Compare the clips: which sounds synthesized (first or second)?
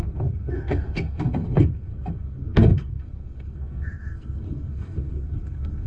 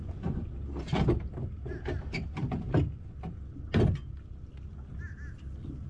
first